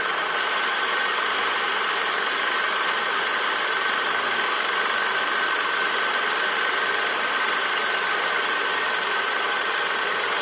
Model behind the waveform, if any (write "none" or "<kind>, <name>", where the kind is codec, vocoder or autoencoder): none